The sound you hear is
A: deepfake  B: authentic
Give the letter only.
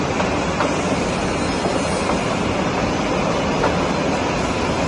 B